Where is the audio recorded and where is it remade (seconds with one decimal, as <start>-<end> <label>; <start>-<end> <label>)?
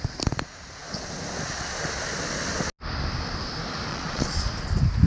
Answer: 0.0-3.9 recorded; 3.9-4.5 remade; 4.5-5.1 recorded